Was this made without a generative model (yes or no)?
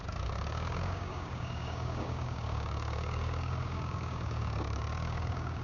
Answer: no